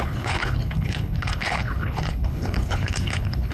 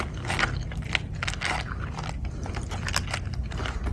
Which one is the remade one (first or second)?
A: first